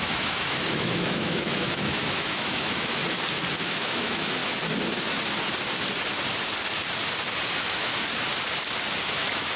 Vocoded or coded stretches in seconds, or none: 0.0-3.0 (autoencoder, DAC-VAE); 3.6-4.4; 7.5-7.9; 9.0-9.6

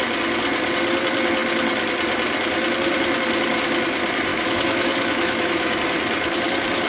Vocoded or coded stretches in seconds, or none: 4.3-5.8 (autoencoder, DAC-VAE)

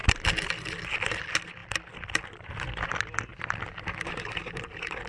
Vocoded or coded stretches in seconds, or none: none

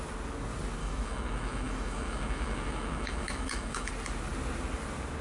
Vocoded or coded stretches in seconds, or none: 0.8-3.9 (autoencoder, DAC-VAE)

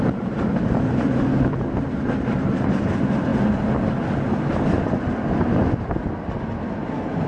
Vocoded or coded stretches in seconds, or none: none

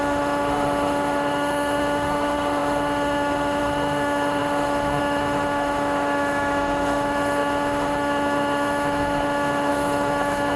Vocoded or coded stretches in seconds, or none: 0.0-10.6 (autoencoder, DAC-VAE)